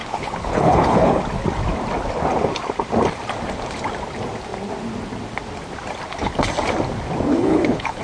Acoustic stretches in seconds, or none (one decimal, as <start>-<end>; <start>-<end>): 1.2-7.3

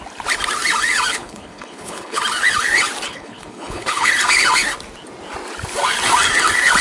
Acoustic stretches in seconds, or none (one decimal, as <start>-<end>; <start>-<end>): 0.0-1.1; 2.2-3.1; 4.1-6.8

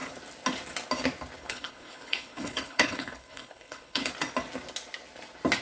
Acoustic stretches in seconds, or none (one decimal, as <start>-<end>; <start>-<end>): 0.0-1.4; 4.1-5.6

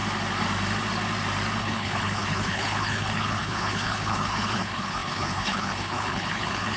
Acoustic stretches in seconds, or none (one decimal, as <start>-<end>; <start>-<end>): 0.0-1.6

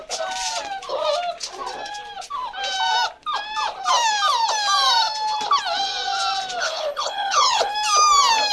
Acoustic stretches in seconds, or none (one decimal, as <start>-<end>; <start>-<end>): 0.0-6.6; 7.7-8.5

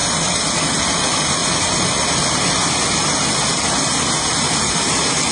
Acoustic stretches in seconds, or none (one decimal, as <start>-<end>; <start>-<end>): 0.0-5.3